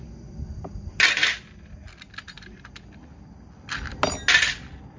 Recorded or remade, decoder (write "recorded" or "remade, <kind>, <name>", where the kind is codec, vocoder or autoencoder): recorded